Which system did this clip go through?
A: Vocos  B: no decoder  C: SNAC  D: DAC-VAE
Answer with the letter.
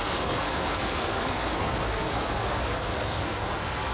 C